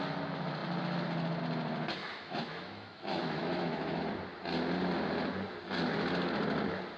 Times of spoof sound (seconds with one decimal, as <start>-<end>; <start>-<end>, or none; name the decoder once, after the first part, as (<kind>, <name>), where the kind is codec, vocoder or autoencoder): 2.0-4.0 (autoencoder, DAC-VAE)